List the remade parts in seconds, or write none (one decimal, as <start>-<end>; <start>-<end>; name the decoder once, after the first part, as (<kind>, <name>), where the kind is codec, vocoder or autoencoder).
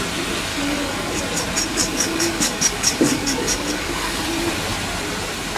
0.5-1.2 (codec, DAC); 1.7-4.2